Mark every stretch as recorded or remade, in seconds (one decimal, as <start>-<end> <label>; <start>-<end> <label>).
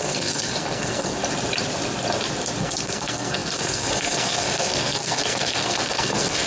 0.0-1.2 remade; 1.2-2.6 recorded; 2.6-6.5 remade